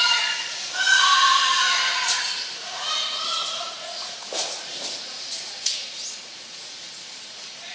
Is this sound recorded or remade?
remade